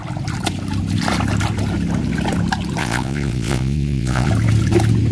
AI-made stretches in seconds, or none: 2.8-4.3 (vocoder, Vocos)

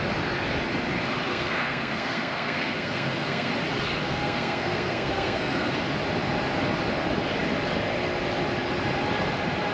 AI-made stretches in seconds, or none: 1.3-3.5 (codec, SNAC); 4.0-5.8

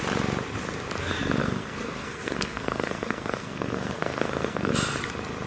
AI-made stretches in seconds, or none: 1.4-4.7 (codec, SNAC)

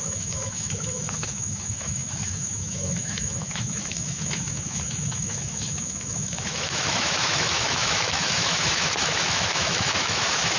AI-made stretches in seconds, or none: 0.0-10.6 (autoencoder, DAC-VAE)